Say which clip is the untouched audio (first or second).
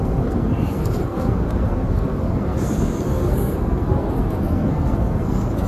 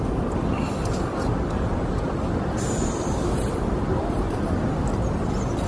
second